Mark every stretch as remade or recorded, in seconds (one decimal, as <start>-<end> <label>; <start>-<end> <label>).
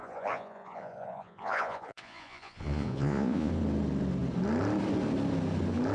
0.0-3.5 remade; 3.5-5.9 recorded